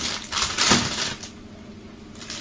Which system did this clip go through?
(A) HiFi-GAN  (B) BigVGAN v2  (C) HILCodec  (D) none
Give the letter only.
D